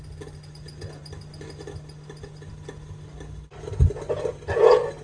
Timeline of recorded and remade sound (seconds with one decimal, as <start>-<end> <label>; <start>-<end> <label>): 0.0-5.0 recorded